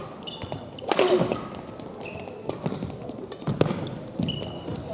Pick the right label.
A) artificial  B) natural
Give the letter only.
B